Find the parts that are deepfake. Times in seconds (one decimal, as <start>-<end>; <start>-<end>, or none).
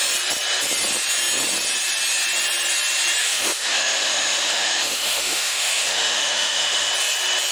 3.2-6.9